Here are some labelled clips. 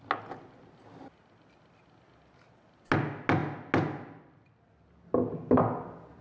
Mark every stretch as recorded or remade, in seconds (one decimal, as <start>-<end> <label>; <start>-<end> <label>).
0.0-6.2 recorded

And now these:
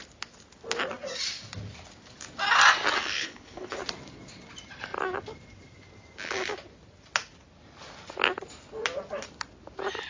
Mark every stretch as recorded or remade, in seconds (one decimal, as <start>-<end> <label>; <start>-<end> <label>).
0.0-3.1 recorded; 3.1-3.8 remade; 3.8-10.1 recorded

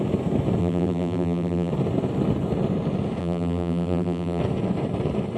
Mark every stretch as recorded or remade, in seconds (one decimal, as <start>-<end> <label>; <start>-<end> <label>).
0.0-0.6 recorded; 0.6-1.7 remade; 1.7-3.2 recorded; 3.2-4.4 remade; 4.4-5.4 recorded

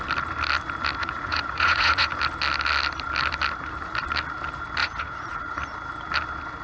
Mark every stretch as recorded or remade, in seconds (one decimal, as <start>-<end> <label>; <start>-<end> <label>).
0.0-1.0 recorded; 1.0-2.1 remade; 2.1-4.8 recorded; 4.8-5.6 remade; 5.6-6.6 recorded

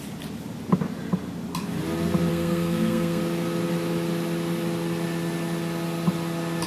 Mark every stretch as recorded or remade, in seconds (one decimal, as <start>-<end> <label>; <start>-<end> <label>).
0.0-2.3 recorded; 2.3-3.2 remade; 3.2-6.7 recorded